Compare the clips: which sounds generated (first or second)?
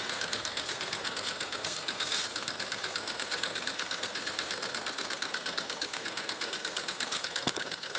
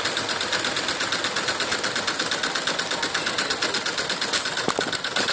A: first